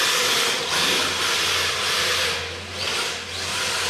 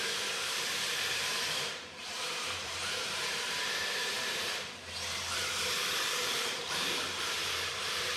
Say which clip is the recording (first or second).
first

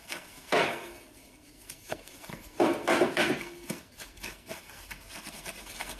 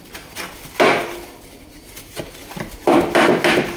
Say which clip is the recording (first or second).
second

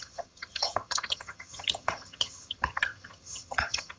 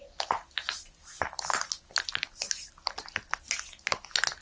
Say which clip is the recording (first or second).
second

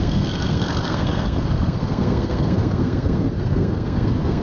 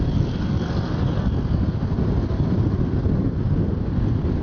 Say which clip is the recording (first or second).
second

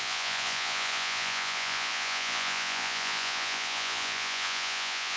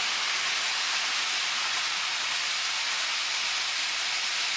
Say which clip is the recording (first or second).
second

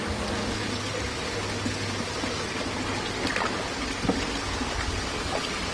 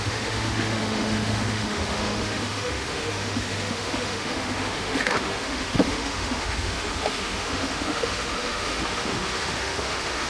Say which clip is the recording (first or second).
first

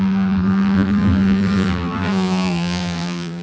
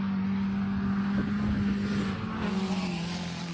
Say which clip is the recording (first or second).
second